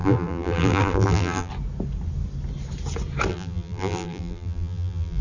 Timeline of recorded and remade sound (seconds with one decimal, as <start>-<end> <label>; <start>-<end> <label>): 0.0-1.5 remade; 1.5-3.3 recorded; 3.3-5.2 remade